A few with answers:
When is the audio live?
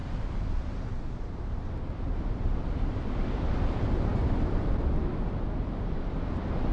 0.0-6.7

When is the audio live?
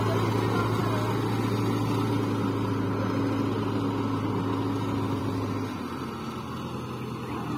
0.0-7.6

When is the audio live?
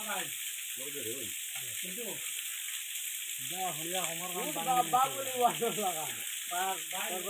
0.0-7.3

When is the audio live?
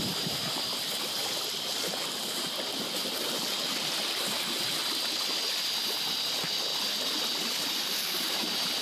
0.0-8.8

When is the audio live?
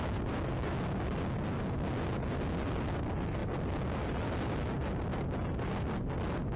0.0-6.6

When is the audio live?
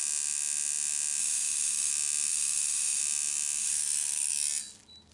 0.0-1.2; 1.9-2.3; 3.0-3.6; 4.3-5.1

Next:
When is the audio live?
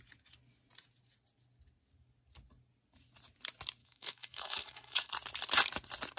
0.0-3.8; 5.1-6.2